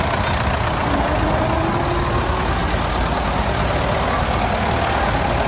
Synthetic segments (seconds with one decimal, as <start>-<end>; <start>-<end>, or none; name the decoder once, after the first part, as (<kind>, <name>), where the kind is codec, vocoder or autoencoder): none